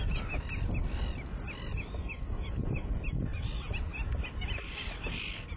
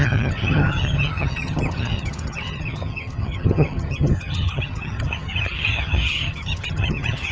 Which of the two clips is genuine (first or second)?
first